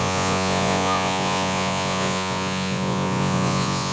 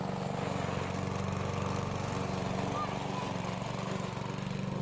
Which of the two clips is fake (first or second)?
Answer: first